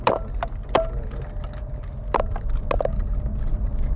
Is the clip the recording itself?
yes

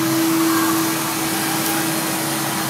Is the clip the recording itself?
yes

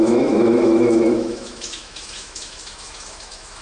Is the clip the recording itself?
no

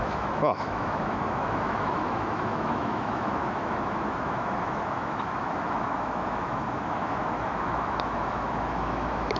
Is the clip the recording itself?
no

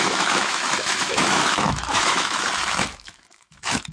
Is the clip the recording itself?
no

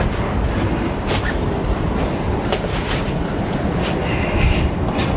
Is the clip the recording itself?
yes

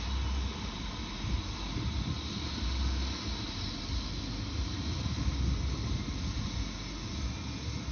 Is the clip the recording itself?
yes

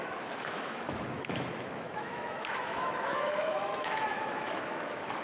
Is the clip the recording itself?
no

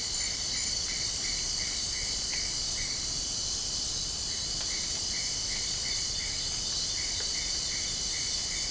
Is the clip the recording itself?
yes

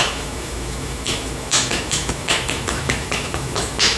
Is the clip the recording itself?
no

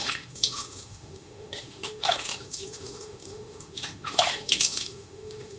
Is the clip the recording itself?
no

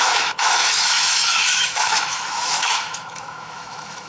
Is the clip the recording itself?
no